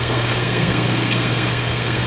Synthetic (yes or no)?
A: yes